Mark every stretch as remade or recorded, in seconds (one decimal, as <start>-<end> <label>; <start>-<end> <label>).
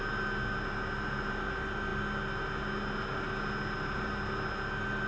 0.0-5.1 recorded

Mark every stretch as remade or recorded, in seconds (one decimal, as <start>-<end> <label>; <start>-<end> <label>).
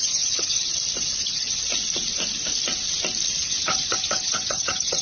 0.0-0.7 remade; 0.7-1.2 recorded; 1.2-1.6 remade; 1.6-3.4 recorded; 3.4-5.0 remade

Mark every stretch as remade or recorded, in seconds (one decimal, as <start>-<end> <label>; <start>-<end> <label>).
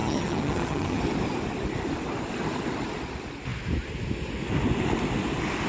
0.0-1.0 remade; 1.0-5.7 recorded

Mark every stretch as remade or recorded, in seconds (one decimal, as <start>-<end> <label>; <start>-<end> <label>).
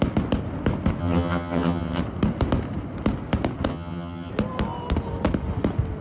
0.0-1.0 recorded; 1.0-2.0 remade; 2.0-3.7 recorded; 3.7-4.3 remade; 4.3-6.0 recorded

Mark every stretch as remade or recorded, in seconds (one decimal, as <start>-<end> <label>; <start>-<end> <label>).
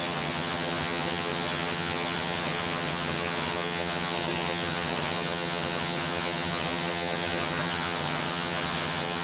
0.0-9.2 remade